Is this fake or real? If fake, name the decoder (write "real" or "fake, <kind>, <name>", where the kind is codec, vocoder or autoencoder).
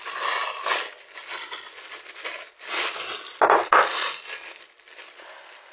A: real